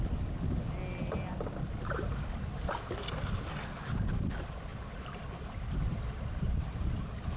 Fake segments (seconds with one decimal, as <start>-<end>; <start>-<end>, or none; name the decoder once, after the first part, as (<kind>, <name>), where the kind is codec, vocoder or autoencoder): 4.7-6.0 (vocoder, BigVGAN v2)